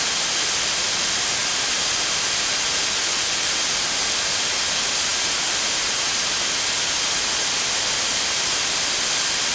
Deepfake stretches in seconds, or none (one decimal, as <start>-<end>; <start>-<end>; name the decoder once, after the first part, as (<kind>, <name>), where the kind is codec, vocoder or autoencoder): 1.4-2.7 (vocoder, BigVGAN v2)